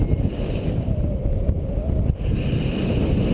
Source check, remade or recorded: recorded